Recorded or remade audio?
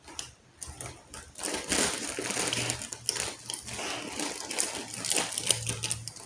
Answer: recorded